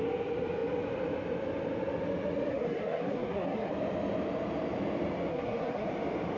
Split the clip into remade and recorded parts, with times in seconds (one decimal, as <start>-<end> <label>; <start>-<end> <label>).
0.0-2.5 recorded; 2.5-3.7 remade; 3.7-5.3 recorded; 5.3-5.9 remade; 5.9-6.4 recorded